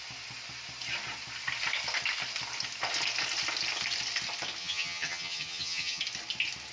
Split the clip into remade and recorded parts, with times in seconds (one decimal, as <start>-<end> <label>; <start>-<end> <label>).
0.0-4.6 recorded; 4.6-6.0 remade; 6.0-6.7 recorded